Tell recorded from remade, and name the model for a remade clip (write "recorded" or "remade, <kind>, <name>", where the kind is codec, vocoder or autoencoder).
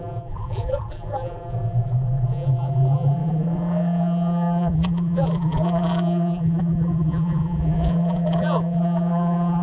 remade, vocoder, BigVGAN v2